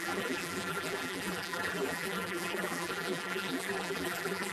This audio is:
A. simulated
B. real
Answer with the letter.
A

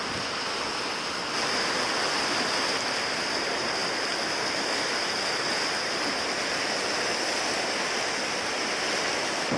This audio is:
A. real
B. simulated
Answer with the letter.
A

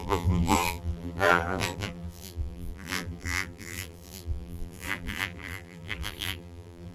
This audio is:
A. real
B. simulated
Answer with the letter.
B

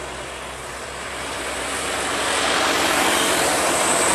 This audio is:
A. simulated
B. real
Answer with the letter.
A